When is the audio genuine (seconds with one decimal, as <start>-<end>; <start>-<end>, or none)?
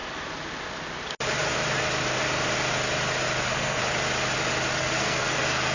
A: 0.0-3.4; 3.8-4.8